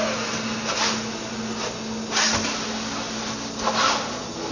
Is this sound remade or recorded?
recorded